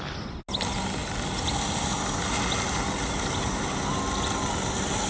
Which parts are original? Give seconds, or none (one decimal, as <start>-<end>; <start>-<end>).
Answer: 0.0-5.1